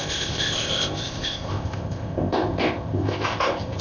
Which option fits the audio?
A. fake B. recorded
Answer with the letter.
A